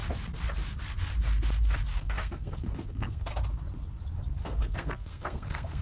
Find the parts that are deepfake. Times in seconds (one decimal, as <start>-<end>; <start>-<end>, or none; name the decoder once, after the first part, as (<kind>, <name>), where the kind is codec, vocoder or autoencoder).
1.9-3.3 (codec, SNAC); 4.4-5.8